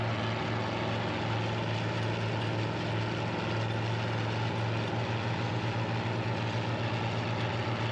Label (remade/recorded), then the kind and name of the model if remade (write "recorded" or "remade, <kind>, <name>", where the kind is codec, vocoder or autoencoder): recorded